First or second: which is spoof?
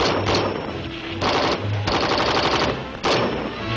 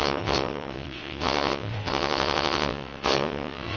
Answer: second